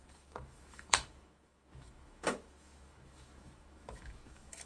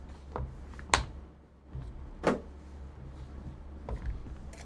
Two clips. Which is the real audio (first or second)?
second